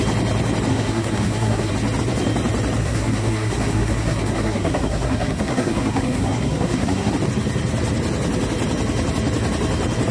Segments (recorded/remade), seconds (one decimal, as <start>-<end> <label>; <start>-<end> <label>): 0.0-0.7 recorded; 0.7-1.7 remade; 1.7-2.8 recorded; 2.8-7.1 remade; 7.1-10.1 recorded